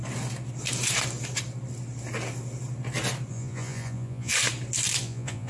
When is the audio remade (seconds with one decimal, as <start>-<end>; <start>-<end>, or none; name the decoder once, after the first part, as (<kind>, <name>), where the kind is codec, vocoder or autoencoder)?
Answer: 3.3-4.3 (vocoder, Vocos); 5.0-5.5